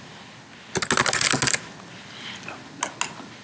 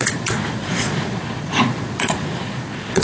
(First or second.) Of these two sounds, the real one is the first